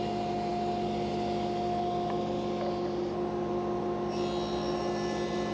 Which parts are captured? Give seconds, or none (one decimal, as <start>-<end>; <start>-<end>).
0.0-5.5